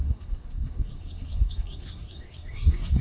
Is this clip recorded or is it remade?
remade